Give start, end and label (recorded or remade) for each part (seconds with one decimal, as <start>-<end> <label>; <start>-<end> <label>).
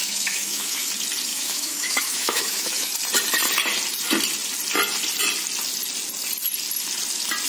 0.0-0.9 remade; 0.9-1.3 recorded; 1.3-2.9 remade; 2.9-7.5 recorded